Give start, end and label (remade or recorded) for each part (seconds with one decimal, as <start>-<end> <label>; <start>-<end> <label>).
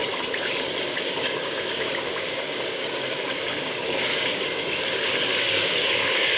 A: 0.0-0.8 recorded; 0.8-6.4 remade